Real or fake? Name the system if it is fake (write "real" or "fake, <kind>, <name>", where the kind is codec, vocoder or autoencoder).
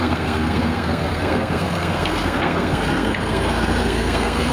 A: fake, codec, SNAC